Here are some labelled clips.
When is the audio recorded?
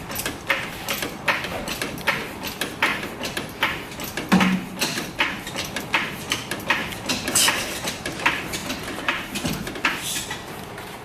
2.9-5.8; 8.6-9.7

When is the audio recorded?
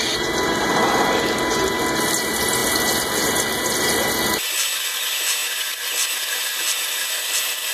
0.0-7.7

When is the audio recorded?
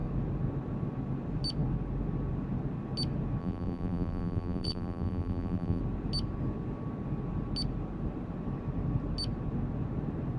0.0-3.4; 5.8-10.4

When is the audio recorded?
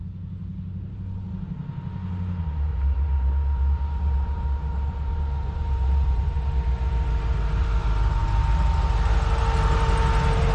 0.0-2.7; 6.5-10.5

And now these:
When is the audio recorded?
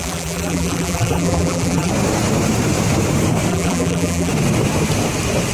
1.9-3.5; 4.3-5.5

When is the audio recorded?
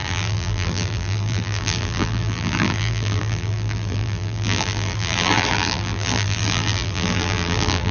none